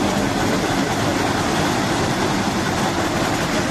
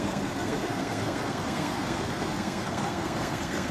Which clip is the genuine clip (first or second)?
first